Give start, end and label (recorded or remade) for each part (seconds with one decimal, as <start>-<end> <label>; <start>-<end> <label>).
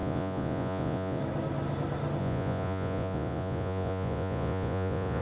0.0-1.2 remade; 1.2-2.2 recorded; 2.2-5.2 remade